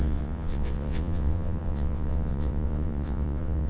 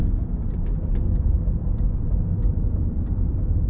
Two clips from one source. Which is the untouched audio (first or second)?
second